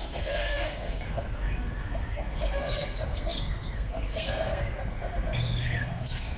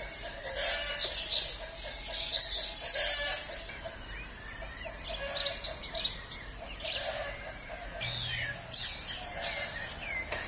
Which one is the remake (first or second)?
first